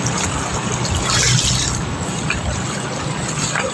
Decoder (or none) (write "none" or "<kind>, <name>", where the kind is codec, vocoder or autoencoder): none